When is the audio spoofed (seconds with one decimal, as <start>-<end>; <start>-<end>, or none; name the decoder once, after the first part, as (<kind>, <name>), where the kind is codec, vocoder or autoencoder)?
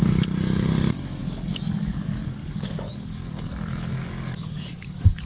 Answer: 0.0-5.3 (codec, DAC)